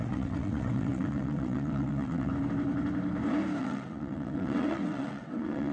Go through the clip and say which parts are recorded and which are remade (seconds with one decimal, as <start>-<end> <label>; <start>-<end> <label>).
0.0-2.3 remade; 2.3-3.6 recorded; 3.6-5.7 remade